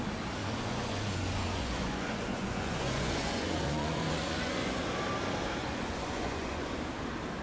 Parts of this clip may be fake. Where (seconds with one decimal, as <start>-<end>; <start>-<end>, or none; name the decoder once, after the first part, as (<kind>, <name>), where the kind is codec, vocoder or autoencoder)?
0.4-4.8 (vocoder, Vocos); 5.6-6.7